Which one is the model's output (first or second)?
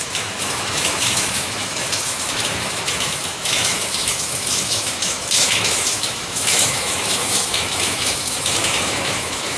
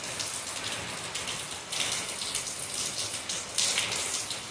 first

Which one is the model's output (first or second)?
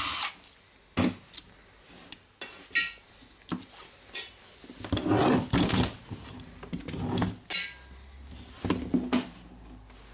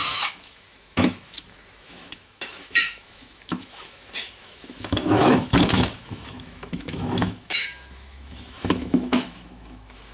second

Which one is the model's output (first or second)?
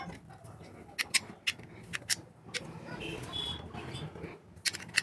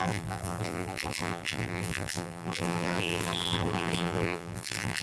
second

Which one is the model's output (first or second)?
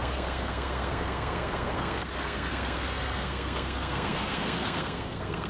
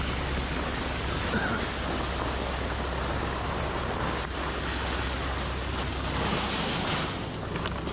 first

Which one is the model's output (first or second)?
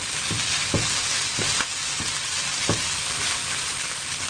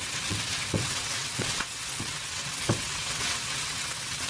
second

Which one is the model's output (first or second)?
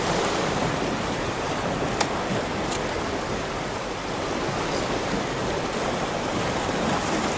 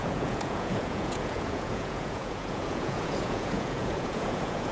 second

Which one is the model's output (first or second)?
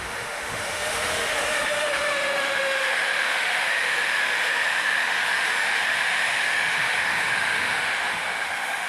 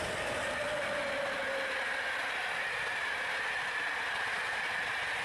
first